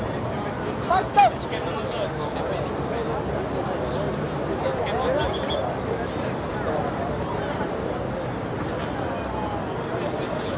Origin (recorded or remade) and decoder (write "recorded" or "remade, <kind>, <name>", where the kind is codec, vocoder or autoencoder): recorded